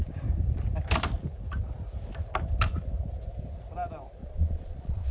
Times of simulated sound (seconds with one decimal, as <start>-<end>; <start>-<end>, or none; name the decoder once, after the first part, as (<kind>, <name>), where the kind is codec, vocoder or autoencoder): 4.2-5.1 (vocoder, Vocos)